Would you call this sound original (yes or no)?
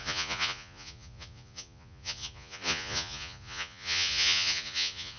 no